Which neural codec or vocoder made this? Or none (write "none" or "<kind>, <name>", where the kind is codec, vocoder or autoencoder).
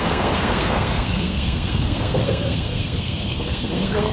codec, SNAC